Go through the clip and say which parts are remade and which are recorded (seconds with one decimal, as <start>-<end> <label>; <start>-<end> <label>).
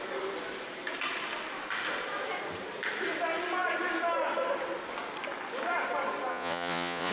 0.0-6.3 recorded; 6.3-7.1 remade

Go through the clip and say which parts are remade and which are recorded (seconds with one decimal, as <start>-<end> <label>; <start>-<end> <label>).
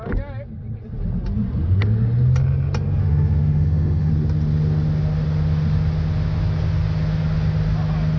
0.0-3.0 recorded; 3.0-4.1 remade; 4.1-8.2 recorded